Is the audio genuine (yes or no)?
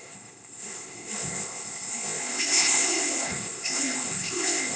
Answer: no